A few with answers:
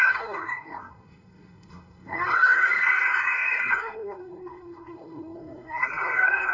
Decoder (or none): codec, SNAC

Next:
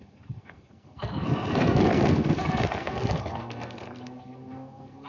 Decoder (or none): codec, SNAC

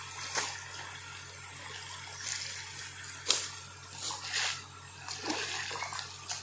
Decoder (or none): none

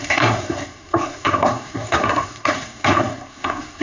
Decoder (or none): codec, SNAC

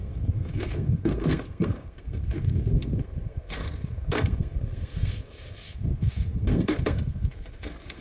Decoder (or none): codec, SNAC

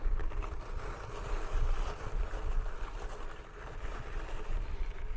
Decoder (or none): none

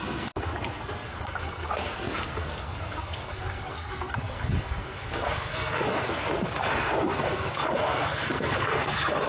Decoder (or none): codec, SNAC